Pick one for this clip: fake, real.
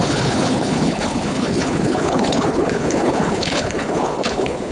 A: fake